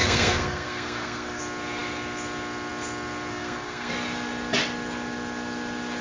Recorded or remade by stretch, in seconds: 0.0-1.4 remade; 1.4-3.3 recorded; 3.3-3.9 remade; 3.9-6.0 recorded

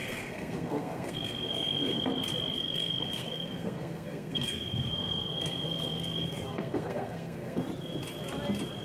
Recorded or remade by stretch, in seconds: 0.0-2.0 remade; 2.0-2.6 recorded; 2.6-7.6 remade; 7.6-8.8 recorded

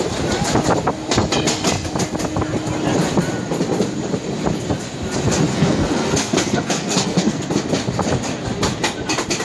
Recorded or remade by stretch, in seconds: 0.0-5.5 recorded; 5.5-7.6 remade; 7.6-9.4 recorded